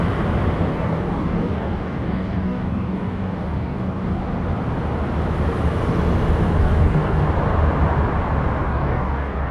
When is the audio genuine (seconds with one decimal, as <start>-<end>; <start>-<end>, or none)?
0.0-0.7; 4.3-6.6; 7.2-8.6